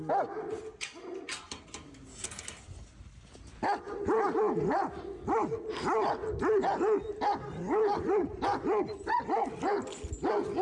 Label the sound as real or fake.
real